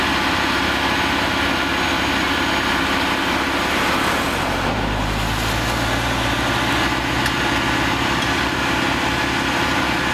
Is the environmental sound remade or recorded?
recorded